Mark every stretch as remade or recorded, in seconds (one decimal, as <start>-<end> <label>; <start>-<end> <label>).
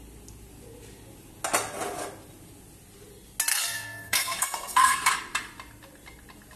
0.0-3.5 recorded; 3.5-5.1 remade; 5.1-6.6 recorded